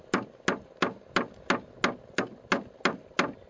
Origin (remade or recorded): recorded